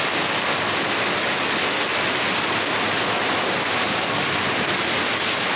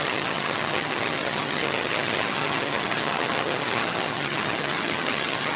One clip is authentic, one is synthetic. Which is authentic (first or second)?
first